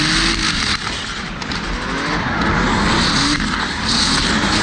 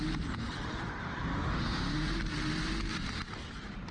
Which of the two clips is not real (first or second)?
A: second